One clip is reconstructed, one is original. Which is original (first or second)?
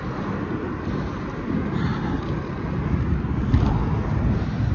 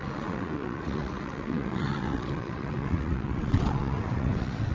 first